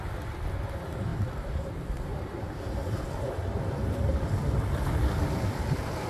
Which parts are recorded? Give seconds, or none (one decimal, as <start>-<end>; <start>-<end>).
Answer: 0.0-1.1; 3.6-6.1